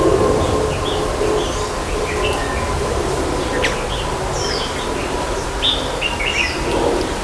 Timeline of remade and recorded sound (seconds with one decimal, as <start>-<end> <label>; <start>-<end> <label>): 0.0-7.2 recorded